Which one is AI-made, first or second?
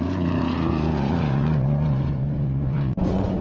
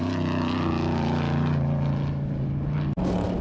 first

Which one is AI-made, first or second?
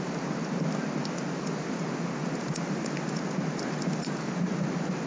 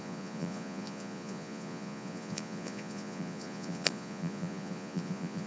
second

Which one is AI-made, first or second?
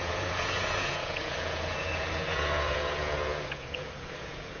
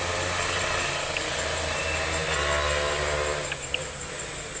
first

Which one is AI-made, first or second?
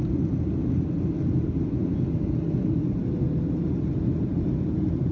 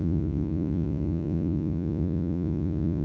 second